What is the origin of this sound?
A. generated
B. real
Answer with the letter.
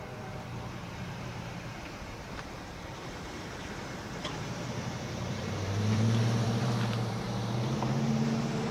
A